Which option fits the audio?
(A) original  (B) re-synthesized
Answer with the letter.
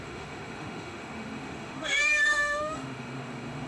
B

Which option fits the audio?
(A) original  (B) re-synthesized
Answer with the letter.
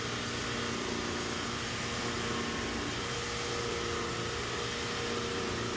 A